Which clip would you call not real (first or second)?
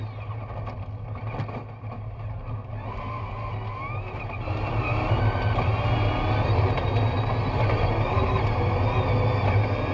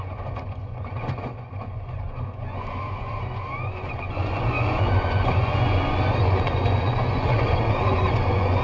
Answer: second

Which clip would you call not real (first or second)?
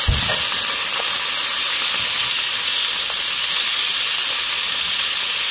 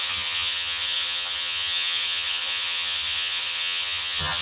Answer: second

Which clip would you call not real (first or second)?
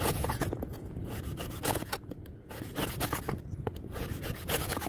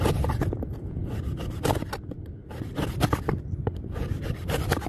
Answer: first